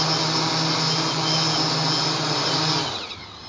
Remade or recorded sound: recorded